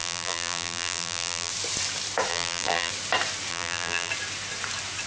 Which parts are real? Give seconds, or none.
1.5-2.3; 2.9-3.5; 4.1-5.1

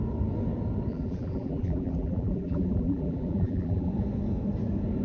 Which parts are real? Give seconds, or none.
0.0-0.9; 3.9-5.0

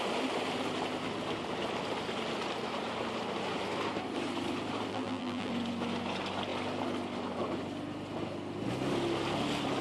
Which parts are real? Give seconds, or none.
0.0-4.9; 5.5-9.8